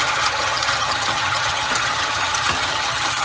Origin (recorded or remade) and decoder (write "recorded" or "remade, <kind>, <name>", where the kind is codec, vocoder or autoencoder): remade, vocoder, HiFi-GAN